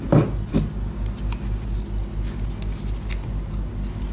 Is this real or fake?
real